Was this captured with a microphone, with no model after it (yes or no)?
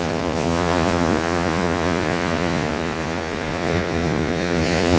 no